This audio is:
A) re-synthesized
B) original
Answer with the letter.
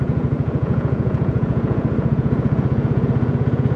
A